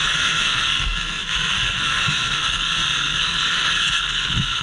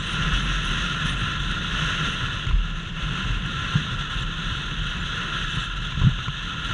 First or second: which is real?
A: second